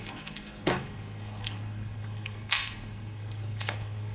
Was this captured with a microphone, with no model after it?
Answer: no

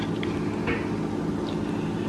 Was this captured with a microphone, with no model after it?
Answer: yes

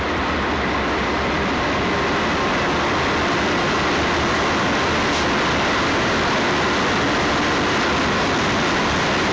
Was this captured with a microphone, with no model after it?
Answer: yes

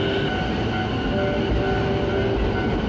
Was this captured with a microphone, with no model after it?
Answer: yes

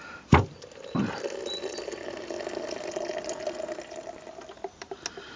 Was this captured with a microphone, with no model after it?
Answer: yes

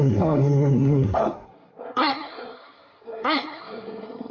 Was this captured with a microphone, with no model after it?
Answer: no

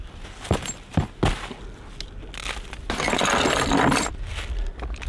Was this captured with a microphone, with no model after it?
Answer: yes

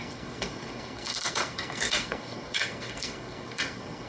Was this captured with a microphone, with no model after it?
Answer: no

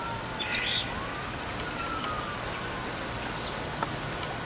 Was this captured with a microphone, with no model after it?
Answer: yes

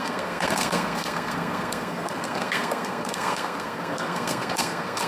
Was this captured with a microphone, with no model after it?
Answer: no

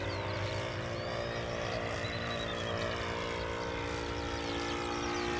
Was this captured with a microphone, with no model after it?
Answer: yes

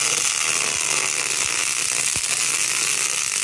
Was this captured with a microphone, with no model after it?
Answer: yes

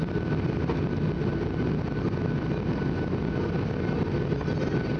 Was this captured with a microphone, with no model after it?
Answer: yes